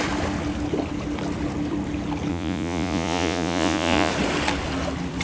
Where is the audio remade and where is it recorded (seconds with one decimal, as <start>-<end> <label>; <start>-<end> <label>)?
0.0-2.3 recorded; 2.3-4.1 remade; 4.1-5.2 recorded